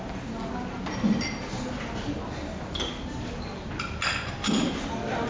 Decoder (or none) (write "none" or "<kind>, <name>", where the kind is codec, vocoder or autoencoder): none